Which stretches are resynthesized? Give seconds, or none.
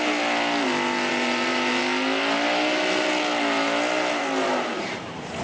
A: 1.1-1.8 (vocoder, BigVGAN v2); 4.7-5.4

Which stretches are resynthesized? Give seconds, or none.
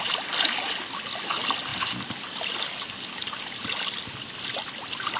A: none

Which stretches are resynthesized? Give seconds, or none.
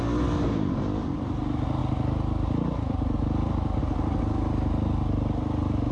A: none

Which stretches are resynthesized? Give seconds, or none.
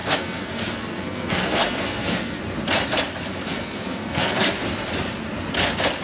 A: 0.0-2.4 (codec, SNAC); 3.5-4.5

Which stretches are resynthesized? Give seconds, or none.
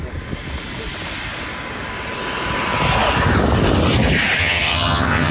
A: 4.4-5.3 (vocoder, HiFi-GAN)